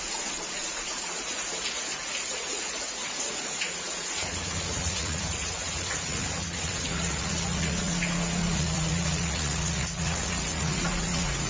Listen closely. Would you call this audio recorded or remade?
remade